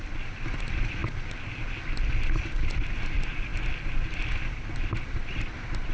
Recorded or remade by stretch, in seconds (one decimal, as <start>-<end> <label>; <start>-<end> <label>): 0.0-5.9 recorded